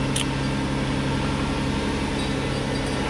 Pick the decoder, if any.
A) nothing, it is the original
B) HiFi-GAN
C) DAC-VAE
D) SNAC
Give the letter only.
A